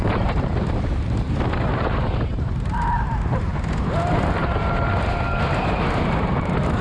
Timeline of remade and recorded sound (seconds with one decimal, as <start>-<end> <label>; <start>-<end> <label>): 0.0-0.5 remade; 0.5-1.5 recorded; 1.5-3.5 remade; 3.5-6.2 recorded; 6.2-6.8 remade